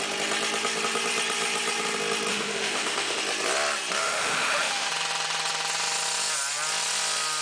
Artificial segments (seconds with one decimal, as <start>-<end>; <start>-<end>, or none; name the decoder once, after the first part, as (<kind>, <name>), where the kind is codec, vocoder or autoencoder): 2.3-3.2 (autoencoder, DAC-VAE); 4.0-4.9